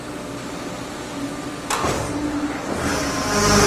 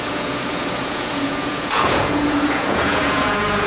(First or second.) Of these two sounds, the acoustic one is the first